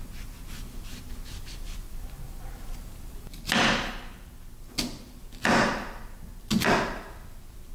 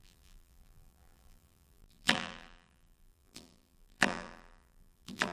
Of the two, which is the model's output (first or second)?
second